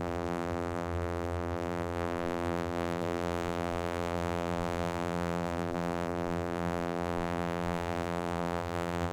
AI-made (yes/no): yes